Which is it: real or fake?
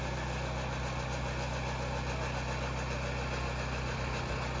real